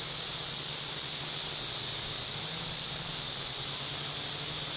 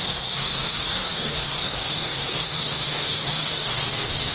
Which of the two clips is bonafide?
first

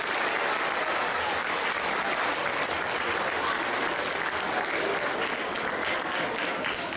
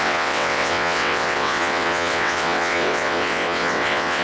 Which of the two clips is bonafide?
first